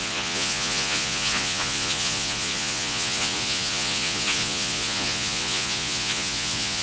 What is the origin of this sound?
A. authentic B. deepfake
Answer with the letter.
B